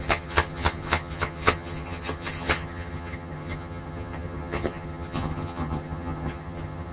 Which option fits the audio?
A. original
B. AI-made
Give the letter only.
B